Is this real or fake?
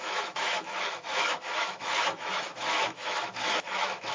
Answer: fake